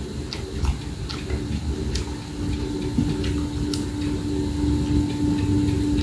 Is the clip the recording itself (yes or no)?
yes